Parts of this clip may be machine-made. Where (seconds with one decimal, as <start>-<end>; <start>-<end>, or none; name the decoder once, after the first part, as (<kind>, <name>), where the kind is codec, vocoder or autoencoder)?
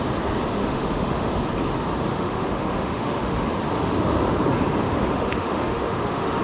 0.6-1.3 (autoencoder, DAC-VAE); 2.1-3.5; 4.8-6.4